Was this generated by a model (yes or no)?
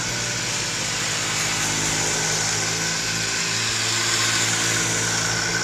no